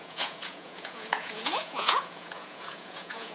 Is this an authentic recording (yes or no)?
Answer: no